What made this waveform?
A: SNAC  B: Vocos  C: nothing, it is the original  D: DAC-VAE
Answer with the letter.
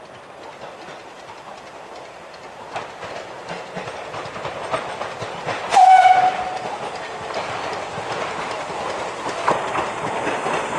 C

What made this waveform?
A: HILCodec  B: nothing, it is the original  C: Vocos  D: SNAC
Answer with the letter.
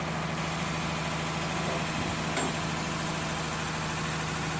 B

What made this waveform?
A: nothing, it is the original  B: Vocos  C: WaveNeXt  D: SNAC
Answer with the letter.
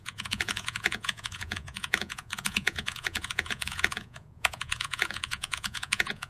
B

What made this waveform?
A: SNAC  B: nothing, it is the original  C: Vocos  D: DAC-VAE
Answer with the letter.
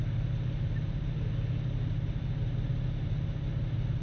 B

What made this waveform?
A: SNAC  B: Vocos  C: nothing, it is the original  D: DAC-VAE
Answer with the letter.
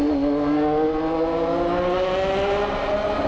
C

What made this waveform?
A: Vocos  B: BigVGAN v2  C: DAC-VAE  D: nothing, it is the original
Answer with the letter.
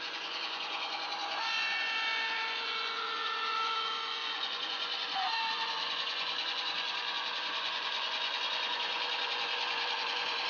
A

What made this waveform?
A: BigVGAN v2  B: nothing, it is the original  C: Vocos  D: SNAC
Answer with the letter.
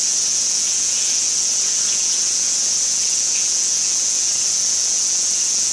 C